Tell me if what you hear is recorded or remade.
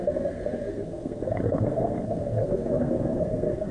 remade